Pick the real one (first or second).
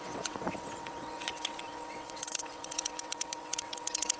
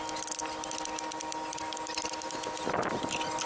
second